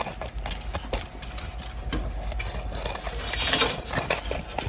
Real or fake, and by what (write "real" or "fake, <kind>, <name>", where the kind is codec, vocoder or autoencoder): real